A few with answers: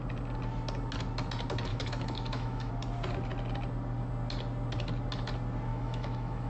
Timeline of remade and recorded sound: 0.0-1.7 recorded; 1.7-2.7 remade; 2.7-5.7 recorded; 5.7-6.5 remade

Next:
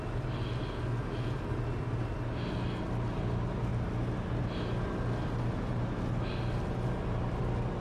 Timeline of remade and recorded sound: 0.0-7.8 recorded